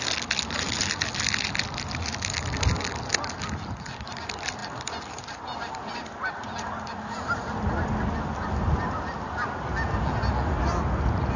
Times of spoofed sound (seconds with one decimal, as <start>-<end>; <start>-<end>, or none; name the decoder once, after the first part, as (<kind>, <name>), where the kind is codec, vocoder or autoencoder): none